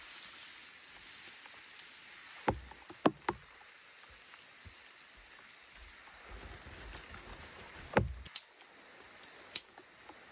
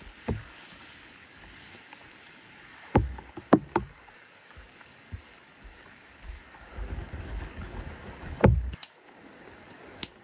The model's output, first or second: second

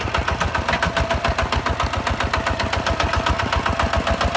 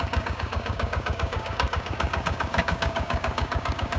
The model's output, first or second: second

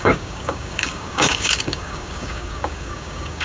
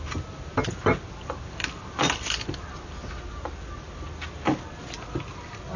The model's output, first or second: first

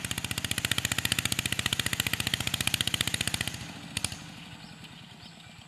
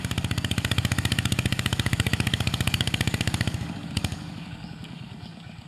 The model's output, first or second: second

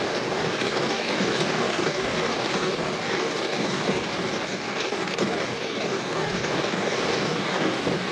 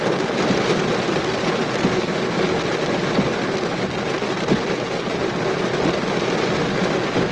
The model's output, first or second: first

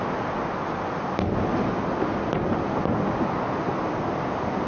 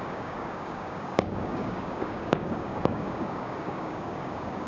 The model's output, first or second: second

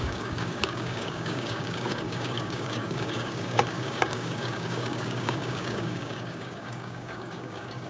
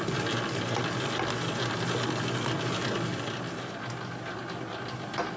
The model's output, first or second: first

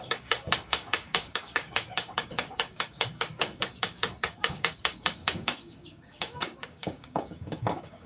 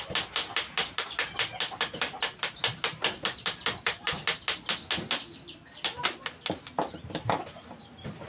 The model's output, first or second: first